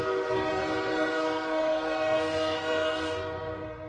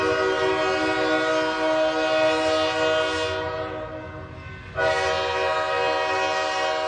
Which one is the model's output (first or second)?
first